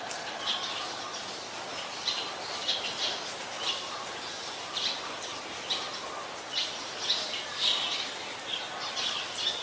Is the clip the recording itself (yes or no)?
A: yes